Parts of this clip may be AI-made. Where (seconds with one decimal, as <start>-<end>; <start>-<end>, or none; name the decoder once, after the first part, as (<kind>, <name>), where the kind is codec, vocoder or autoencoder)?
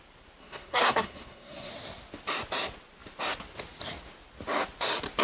0.4-1.7 (codec, SNAC)